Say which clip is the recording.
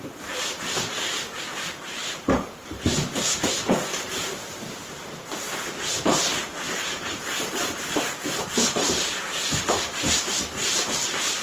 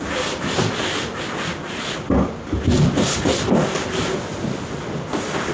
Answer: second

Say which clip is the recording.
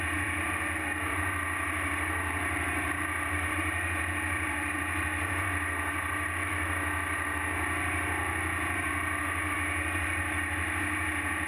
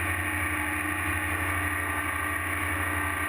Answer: second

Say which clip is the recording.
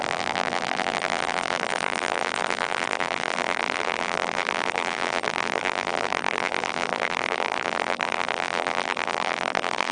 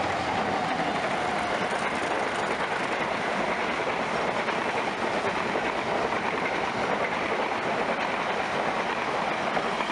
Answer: second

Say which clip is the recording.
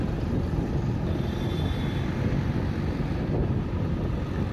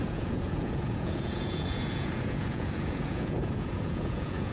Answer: first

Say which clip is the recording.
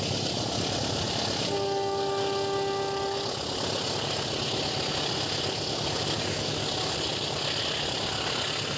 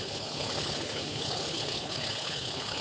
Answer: first